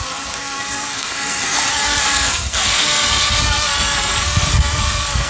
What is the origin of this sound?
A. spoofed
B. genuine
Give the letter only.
A